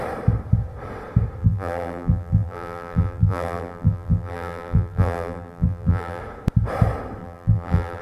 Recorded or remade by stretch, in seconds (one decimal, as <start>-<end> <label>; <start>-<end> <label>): 0.0-1.4 recorded; 1.4-6.2 remade; 6.2-7.2 recorded; 7.2-8.0 remade